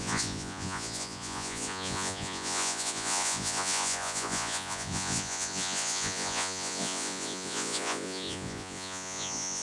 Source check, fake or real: fake